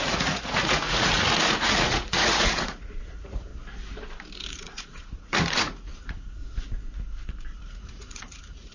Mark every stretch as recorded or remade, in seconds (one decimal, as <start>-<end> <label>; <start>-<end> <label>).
0.0-3.5 remade; 3.5-4.5 recorded; 4.5-6.4 remade; 6.4-7.6 recorded; 7.6-8.7 remade